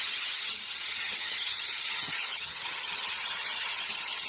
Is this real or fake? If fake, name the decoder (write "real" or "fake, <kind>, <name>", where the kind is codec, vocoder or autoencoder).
fake, vocoder, HiFi-GAN